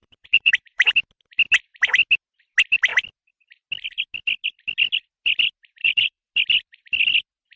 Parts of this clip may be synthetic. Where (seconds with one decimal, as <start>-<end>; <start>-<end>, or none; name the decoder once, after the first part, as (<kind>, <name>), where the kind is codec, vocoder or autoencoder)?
0.0-0.9 (vocoder, BigVGAN v2); 5.8-6.3